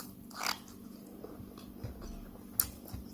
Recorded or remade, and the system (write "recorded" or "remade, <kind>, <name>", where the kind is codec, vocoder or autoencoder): recorded